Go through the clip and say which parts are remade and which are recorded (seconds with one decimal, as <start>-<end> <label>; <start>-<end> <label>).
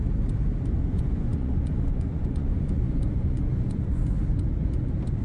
0.0-0.9 recorded; 0.9-4.0 remade; 4.0-5.2 recorded